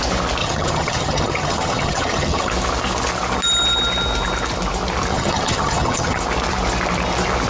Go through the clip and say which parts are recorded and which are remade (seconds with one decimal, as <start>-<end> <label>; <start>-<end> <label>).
0.0-0.4 recorded; 0.4-2.5 remade; 2.5-5.1 recorded; 5.1-6.2 remade; 6.2-7.5 recorded